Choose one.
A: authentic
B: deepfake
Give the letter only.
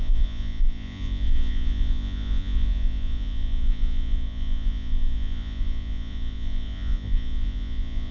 B